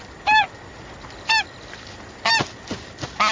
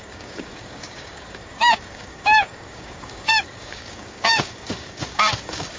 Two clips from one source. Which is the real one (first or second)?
first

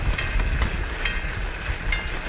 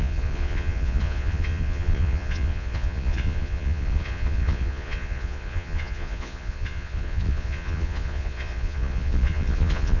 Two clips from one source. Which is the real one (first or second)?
first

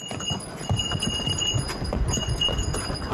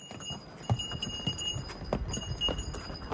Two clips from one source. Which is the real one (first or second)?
second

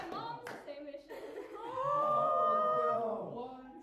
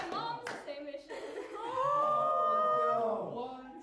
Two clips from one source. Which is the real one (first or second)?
second